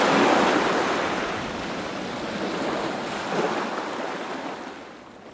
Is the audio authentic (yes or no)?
yes